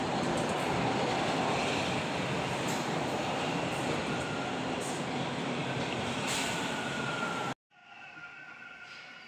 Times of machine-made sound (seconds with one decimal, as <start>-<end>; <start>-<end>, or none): none